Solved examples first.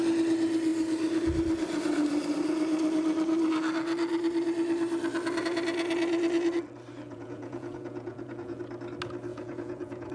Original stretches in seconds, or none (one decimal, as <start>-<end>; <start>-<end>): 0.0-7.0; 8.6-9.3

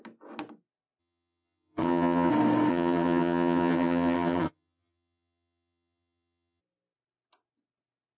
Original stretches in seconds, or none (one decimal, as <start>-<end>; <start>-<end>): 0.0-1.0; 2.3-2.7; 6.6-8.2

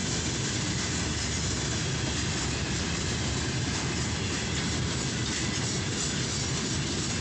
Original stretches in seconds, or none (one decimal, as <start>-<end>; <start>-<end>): 0.8-7.2